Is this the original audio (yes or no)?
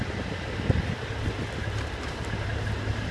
yes